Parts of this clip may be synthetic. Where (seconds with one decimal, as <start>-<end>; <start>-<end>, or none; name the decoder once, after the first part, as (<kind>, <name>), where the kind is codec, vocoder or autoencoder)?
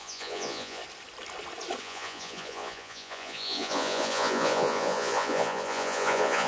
0.0-0.8 (vocoder, Vocos); 1.8-6.5